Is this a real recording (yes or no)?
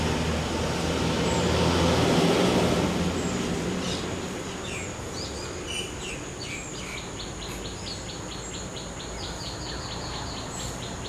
yes